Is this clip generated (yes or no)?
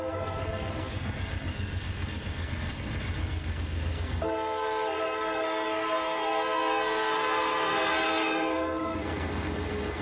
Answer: yes